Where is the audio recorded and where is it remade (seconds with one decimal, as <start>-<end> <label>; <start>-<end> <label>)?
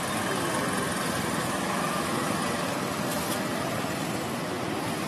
0.0-1.4 recorded; 1.4-2.4 remade; 2.4-5.1 recorded